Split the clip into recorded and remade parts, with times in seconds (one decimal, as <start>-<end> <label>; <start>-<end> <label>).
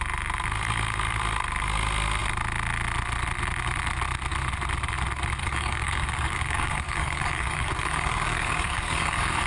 0.0-5.4 recorded; 5.4-9.5 remade